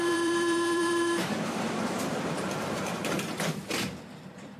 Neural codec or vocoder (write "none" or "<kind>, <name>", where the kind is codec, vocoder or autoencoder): vocoder, BigVGAN v2